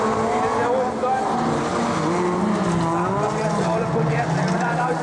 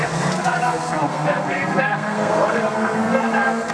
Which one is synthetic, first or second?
second